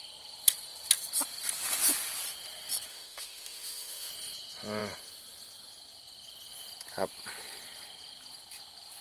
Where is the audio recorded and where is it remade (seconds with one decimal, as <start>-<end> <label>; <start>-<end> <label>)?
0.0-2.9 recorded; 2.9-4.1 remade; 4.1-9.0 recorded

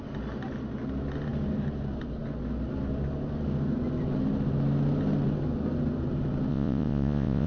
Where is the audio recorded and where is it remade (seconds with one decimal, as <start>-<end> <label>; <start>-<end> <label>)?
0.0-6.5 recorded; 6.5-7.5 remade

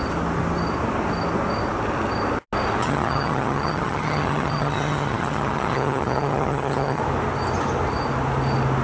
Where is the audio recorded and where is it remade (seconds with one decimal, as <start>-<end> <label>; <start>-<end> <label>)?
0.0-2.8 recorded; 2.8-7.0 remade; 7.0-8.8 recorded